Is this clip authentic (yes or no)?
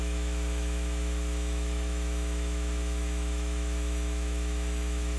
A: no